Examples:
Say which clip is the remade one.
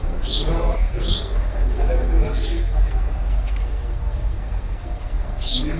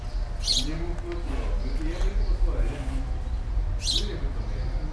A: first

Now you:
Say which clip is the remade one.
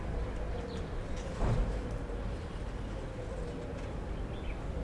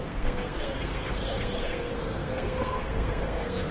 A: second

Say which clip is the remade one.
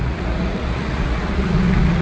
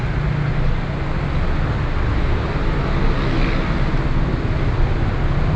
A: first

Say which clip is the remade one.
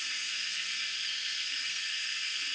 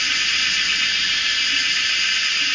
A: first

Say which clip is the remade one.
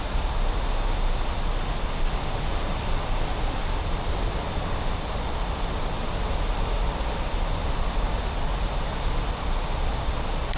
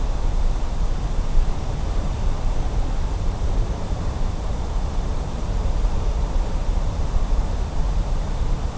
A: second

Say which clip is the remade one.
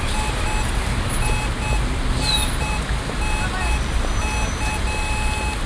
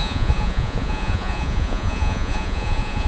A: second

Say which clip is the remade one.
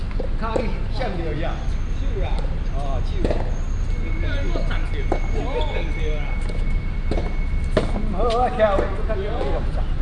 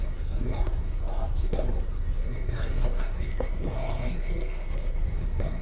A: second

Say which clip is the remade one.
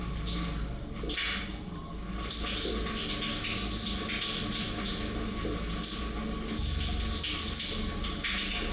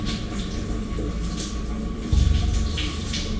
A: second